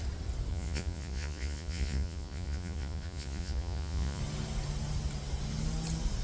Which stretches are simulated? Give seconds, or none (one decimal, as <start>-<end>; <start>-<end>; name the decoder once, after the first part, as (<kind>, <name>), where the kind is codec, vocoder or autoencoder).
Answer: 0.5-4.2 (vocoder, Vocos)